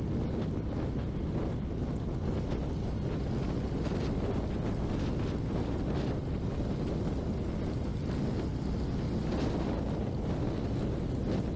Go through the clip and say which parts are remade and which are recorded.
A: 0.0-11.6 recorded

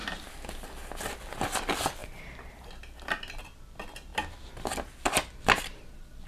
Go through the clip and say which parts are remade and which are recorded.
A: 0.0-6.3 recorded

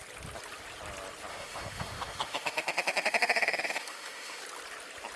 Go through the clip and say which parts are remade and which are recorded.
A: 0.0-1.3 recorded; 1.3-4.4 remade; 4.4-5.2 recorded

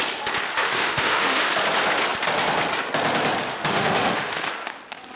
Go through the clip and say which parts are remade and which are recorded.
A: 0.0-0.5 recorded; 0.5-1.4 remade; 1.4-3.5 recorded; 3.5-4.5 remade; 4.5-5.2 recorded

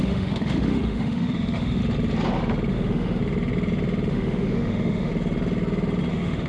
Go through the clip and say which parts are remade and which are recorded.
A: 0.0-1.8 remade; 1.8-2.7 recorded; 2.7-3.2 remade; 3.2-4.1 recorded; 4.1-5.1 remade; 5.1-6.1 recorded; 6.1-6.5 remade

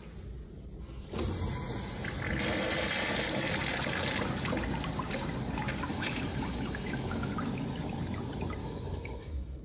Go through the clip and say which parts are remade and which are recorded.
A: 0.0-5.9 recorded; 5.9-7.3 remade; 7.3-8.6 recorded; 8.6-9.6 remade

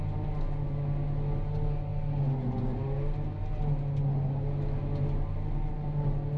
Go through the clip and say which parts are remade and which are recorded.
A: 0.0-6.4 recorded